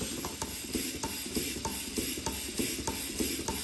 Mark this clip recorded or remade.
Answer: recorded